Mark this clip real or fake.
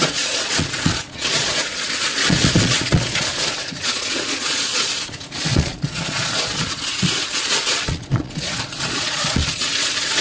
fake